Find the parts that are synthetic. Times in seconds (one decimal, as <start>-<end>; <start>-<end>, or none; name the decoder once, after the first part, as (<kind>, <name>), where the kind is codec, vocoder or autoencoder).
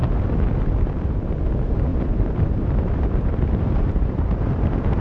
1.9-5.0 (vocoder, BigVGAN v2)